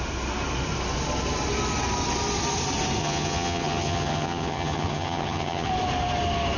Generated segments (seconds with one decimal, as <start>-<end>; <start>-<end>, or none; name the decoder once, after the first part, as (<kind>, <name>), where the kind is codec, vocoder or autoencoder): 3.0-5.7 (vocoder, HiFi-GAN)

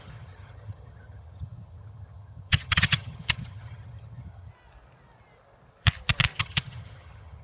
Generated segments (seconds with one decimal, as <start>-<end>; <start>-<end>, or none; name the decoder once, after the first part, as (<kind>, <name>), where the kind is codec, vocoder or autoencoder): 0.0-4.5 (vocoder, HiFi-GAN); 6.4-7.4

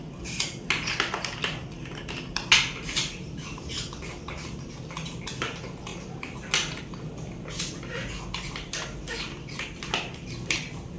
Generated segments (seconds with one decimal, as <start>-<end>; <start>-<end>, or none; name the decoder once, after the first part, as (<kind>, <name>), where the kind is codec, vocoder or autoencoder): none